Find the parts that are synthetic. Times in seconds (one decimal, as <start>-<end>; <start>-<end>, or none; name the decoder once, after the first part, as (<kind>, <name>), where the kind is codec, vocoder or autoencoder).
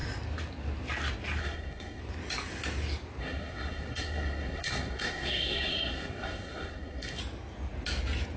1.4-2.0 (codec, SNAC); 3.2-7.2